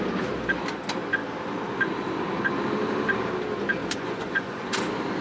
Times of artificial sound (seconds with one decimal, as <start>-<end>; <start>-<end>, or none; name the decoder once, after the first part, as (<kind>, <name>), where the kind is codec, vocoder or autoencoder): 3.8-4.7 (vocoder, Vocos)